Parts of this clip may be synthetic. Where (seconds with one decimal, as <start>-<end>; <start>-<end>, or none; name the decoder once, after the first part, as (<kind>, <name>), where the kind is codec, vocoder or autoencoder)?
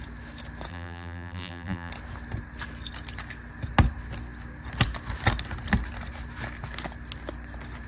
0.7-1.9 (vocoder, BigVGAN v2)